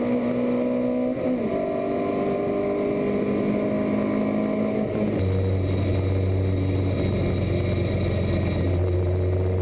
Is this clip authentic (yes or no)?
yes